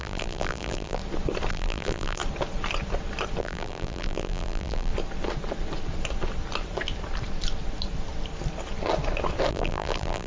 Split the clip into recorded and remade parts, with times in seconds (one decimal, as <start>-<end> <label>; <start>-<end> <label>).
0.0-1.0 remade; 1.0-1.5 recorded; 1.5-2.2 remade; 2.2-3.4 recorded; 3.4-4.9 remade; 4.9-9.5 recorded; 9.5-10.3 remade